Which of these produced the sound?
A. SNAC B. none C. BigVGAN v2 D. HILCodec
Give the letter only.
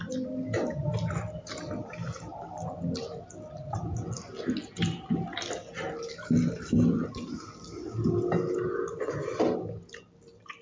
C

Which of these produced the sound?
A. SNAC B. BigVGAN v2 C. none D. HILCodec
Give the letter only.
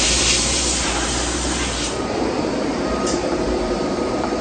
B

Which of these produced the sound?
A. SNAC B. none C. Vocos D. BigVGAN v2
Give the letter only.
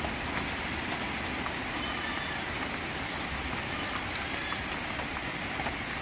B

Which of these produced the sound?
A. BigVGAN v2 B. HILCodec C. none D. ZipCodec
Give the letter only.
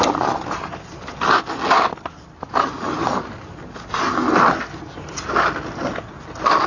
C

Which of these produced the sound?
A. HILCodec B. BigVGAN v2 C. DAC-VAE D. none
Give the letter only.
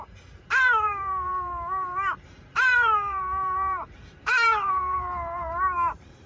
B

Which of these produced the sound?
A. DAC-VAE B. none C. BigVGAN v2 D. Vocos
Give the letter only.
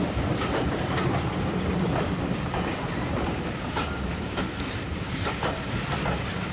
C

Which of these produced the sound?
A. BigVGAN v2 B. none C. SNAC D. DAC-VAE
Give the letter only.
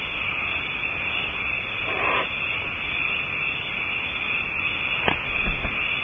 B